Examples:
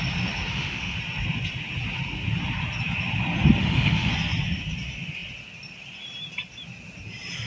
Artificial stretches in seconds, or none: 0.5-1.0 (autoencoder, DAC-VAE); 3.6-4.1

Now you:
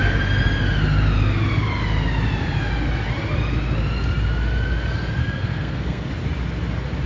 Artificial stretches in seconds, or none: 5.2-6.1 (codec, SNAC)

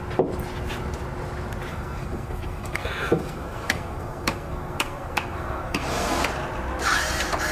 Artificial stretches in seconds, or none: 1.7-6.2 (codec, SNAC)

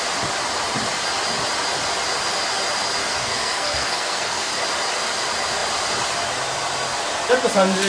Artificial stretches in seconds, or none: 3.0-4.5 (codec, SNAC)

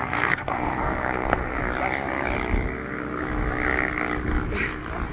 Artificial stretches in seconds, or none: 0.0-1.6 (codec, SNAC)

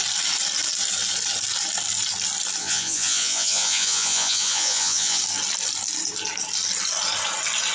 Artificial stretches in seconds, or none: 2.6-5.2 (vocoder, Vocos)

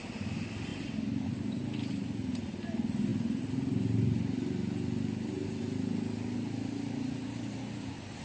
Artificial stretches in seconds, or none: none

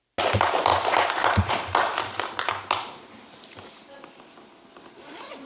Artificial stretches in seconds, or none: 0.7-1.5 (vocoder, BigVGAN v2); 1.9-2.9